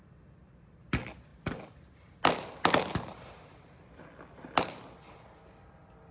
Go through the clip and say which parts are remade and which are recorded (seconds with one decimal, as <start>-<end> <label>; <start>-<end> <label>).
0.0-6.1 recorded